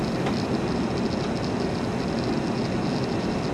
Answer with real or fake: real